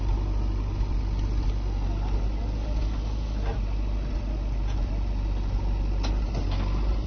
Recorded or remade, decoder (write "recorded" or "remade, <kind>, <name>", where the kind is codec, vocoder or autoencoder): recorded